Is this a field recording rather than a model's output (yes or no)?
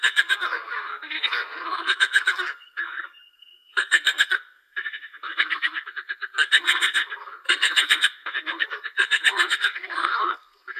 no